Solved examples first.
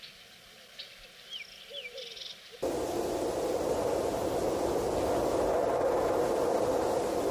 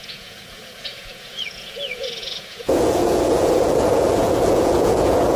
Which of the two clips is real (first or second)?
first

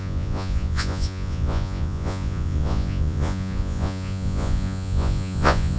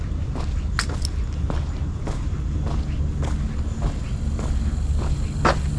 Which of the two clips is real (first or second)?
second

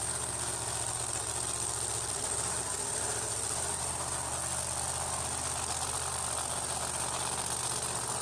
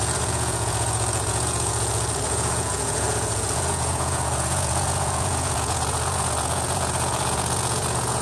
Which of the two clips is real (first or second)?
first